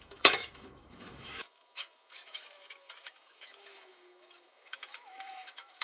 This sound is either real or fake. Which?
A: fake